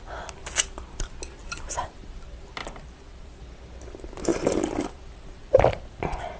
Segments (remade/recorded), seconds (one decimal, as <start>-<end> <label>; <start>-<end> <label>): 0.0-1.4 recorded; 1.4-2.0 remade; 2.0-2.6 recorded; 2.6-3.4 remade; 3.4-4.3 recorded; 4.3-6.0 remade; 6.0-6.4 recorded